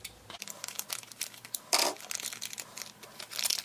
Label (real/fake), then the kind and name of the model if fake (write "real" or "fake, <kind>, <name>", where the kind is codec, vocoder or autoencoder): real